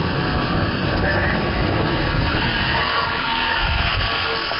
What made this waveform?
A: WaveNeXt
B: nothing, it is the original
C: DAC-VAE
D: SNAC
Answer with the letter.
D